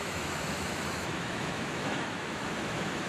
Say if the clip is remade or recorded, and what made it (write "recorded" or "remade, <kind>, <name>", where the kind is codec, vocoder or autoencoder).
remade, autoencoder, DAC-VAE